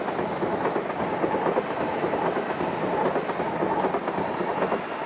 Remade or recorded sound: recorded